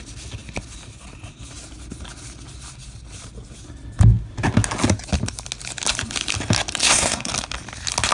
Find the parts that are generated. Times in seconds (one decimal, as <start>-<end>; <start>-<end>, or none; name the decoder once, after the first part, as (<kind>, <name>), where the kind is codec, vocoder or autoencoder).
6.8-7.3 (codec, SNAC)